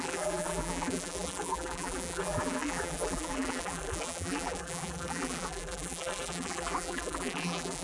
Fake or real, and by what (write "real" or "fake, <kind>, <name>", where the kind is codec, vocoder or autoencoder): fake, vocoder, BigVGAN v2